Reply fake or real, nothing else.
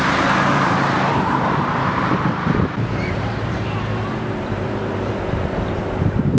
fake